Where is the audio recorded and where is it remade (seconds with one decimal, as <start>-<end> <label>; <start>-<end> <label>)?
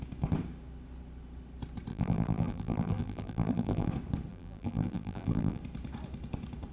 0.0-1.9 recorded; 1.9-3.9 remade; 3.9-4.3 recorded; 4.3-5.6 remade; 5.6-6.7 recorded